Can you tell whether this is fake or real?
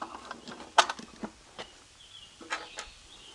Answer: real